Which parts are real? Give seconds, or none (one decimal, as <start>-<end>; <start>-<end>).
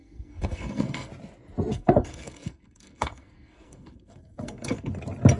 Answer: 1.1-1.7; 4.9-5.4